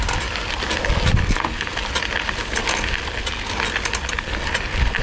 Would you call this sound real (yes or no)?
yes